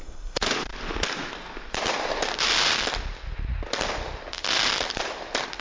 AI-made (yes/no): no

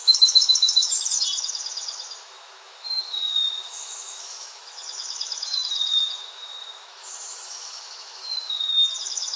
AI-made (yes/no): yes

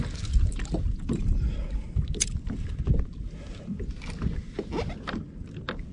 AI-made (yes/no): no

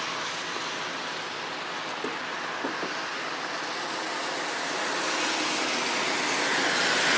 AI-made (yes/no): no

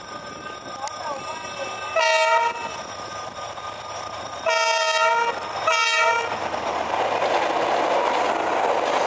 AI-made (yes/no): no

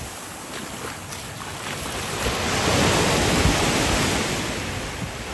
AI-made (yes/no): no